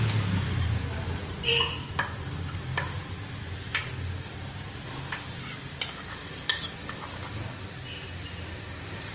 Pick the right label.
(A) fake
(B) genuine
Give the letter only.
B